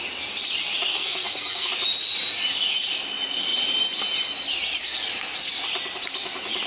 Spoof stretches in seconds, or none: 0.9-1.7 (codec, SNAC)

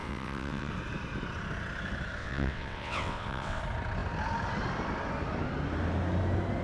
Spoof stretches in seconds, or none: 0.0-0.7 (vocoder, WaveNeXt); 2.2-3.6

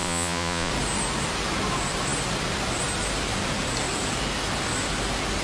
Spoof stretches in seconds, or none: 0.0-0.7 (vocoder, Vocos)

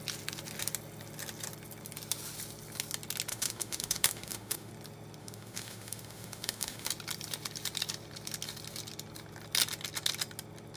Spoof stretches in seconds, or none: 3.3-4.7 (autoencoder, DAC-VAE); 5.2-6.9

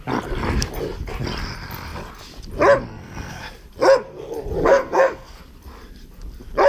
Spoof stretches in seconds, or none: 2.9-3.5 (codec, SNAC); 4.6-5.4

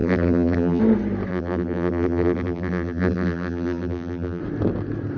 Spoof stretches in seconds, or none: 0.0-0.8 (vocoder, BigVGAN v2); 1.3-4.4

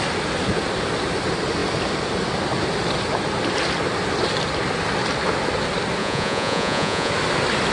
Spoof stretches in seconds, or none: 6.0-7.1 (vocoder, Vocos)